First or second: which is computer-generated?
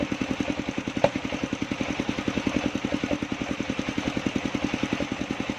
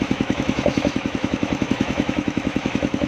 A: second